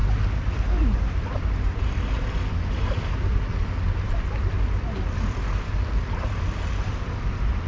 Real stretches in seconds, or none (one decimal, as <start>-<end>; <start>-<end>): 0.0-7.7